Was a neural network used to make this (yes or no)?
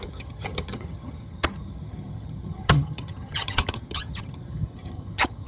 yes